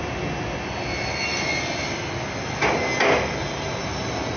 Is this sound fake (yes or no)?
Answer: no